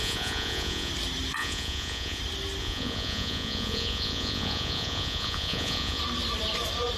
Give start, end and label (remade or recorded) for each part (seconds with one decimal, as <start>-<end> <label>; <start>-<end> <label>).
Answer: 0.0-0.9 remade; 0.9-1.4 recorded; 1.4-2.2 remade; 2.2-2.6 recorded; 2.6-6.0 remade; 6.0-7.0 recorded